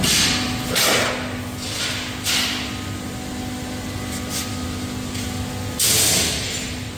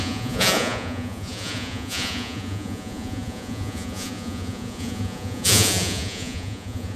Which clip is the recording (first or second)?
first